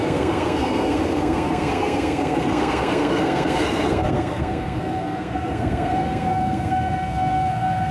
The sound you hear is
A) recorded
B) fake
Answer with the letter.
B